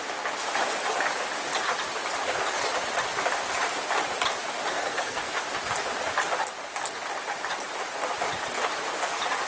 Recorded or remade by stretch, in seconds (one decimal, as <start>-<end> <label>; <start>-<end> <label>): 0.0-4.7 recorded; 4.7-5.3 remade; 5.3-9.5 recorded